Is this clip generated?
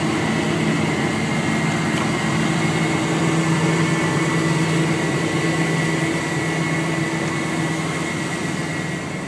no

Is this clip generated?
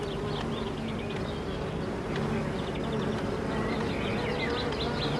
no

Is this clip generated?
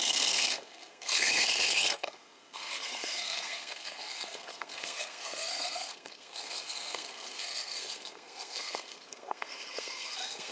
yes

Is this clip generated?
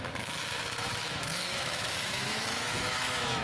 yes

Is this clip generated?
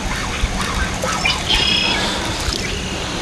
no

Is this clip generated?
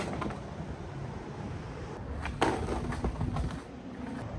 no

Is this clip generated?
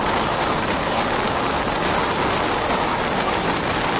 no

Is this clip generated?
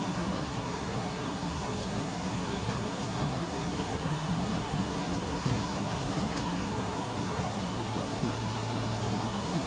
yes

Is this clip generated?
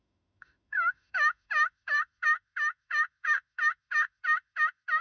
yes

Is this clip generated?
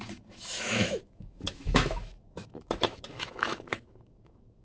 yes